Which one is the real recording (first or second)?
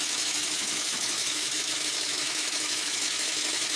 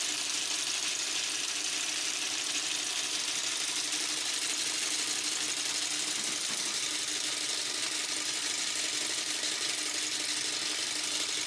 second